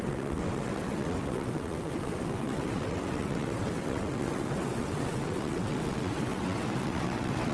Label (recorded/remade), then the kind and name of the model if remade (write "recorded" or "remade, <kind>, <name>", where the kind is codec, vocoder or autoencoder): remade, vocoder, WaveNeXt